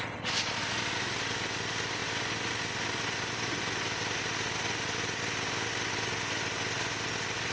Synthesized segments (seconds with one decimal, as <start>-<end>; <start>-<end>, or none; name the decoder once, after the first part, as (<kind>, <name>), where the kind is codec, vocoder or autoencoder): none